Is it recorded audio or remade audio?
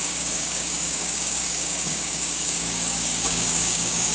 remade